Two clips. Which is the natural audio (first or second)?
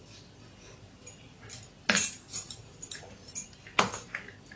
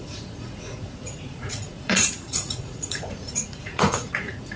first